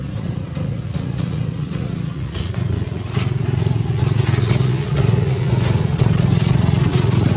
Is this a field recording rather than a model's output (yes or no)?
no